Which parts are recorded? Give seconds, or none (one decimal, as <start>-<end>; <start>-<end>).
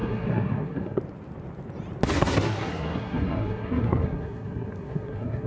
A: 1.0-2.1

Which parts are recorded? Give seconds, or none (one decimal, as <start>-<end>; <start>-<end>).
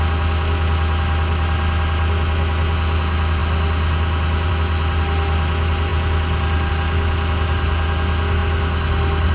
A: 0.0-9.3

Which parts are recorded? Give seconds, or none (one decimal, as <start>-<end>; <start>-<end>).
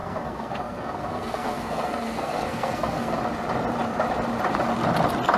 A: 3.2-5.4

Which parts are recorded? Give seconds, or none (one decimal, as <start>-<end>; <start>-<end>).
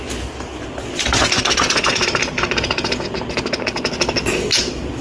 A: 0.0-5.0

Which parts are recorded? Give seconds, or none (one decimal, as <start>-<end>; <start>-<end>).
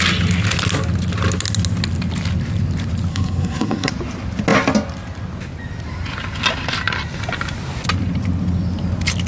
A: 0.0-3.1; 3.9-9.3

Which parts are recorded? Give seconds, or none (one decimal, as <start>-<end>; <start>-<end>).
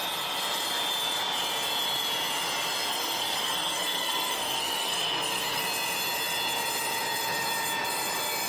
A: 0.0-2.9; 5.6-8.5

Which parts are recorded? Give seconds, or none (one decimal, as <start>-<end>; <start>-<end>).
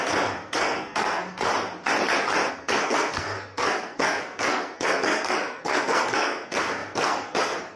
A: 1.5-2.5